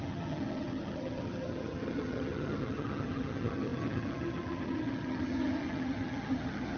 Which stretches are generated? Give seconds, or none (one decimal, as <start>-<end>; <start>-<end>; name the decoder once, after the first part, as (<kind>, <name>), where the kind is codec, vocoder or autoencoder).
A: 0.0-6.8 (vocoder, HiFi-GAN)